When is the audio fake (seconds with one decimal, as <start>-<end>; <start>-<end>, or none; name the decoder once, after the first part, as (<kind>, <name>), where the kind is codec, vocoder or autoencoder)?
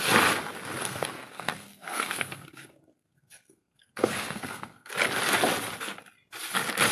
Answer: 0.8-4.9 (codec, SNAC)